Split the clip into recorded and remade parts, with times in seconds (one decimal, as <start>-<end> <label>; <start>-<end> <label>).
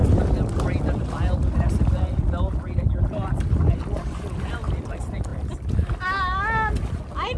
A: 0.0-7.4 recorded